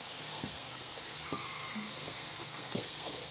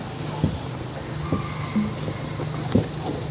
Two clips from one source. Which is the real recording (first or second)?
second